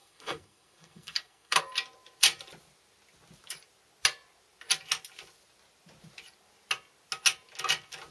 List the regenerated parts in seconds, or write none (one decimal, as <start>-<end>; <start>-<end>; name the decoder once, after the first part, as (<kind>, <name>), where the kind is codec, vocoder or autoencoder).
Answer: 0.0-1.6 (codec, SNAC)